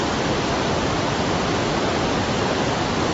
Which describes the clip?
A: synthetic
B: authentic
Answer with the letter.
B